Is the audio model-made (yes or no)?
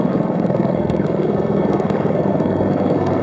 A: yes